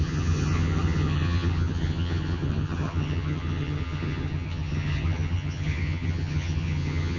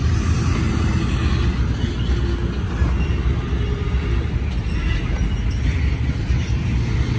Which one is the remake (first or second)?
first